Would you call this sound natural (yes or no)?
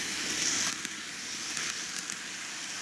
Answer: yes